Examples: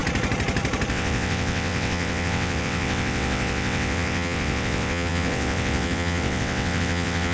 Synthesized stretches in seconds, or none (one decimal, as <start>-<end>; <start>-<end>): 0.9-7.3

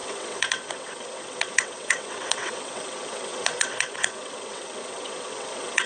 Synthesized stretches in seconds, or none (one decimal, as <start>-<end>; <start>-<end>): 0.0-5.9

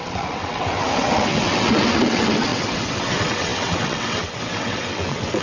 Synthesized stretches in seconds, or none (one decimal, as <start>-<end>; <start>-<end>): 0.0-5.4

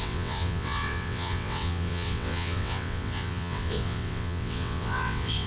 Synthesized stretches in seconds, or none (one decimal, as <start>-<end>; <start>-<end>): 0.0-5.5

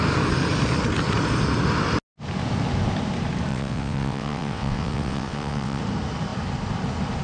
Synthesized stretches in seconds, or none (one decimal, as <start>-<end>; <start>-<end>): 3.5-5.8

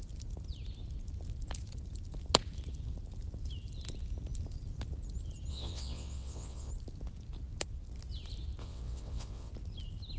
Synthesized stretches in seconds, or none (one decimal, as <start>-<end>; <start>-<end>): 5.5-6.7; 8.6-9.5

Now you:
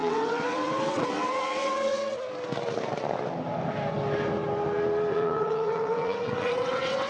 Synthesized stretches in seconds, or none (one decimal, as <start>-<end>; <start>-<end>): 0.0-2.2; 5.1-7.1

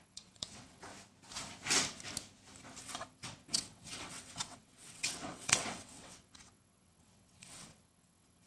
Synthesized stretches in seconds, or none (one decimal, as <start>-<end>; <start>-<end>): 0.0-0.9; 2.8-8.5